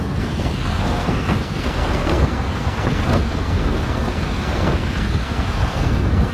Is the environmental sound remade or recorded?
remade